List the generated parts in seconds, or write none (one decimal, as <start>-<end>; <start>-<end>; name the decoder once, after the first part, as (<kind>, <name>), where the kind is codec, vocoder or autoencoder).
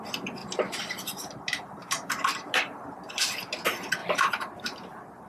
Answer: 0.4-3.6 (vocoder, BigVGAN v2); 4.0-5.3